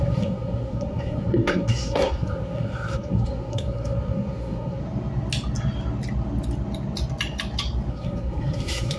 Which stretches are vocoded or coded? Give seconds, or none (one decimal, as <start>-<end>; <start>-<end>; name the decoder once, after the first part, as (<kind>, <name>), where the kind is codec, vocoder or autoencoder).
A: 0.0-4.8 (codec, SNAC); 7.9-9.0